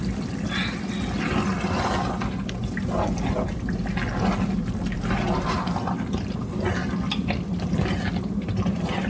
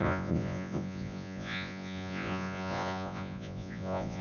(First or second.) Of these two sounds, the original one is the first